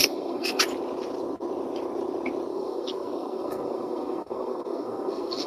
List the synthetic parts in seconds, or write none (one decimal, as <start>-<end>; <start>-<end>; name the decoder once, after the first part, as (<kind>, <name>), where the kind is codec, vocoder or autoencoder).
0.0-0.6 (codec, SNAC); 2.5-5.5